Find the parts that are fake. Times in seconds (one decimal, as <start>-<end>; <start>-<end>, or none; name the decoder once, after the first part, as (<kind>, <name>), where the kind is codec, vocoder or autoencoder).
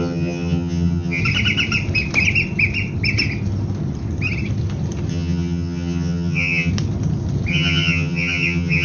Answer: 0.0-1.2 (vocoder, HiFi-GAN); 5.1-6.7; 7.5-8.8